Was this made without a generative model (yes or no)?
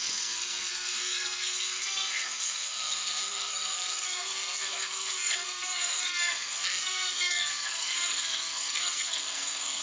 no